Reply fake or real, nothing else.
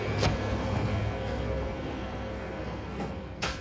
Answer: fake